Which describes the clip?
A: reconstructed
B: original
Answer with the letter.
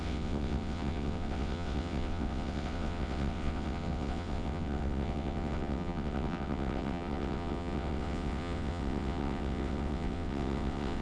A